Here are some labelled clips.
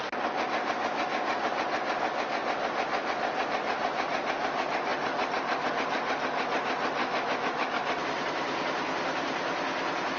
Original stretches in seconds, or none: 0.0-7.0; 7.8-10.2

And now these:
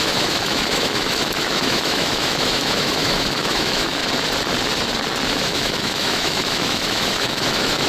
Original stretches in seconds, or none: 4.0-5.3

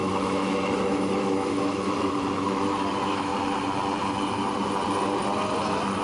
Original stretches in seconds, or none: 3.3-6.0

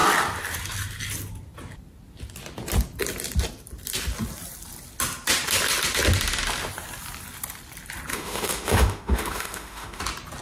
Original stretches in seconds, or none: 0.0-8.1; 10.0-10.4

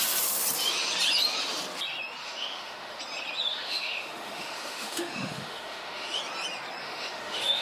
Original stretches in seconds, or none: 0.0-2.2; 3.0-3.5; 6.2-6.8